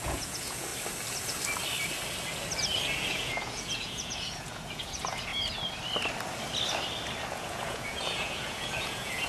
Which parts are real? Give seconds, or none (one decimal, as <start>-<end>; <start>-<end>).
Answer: 0.7-3.1; 5.3-7.3